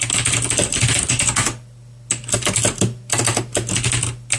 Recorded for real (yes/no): yes